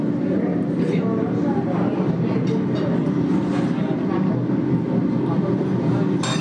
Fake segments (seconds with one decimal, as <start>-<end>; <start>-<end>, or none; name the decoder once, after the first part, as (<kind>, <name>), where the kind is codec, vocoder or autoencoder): none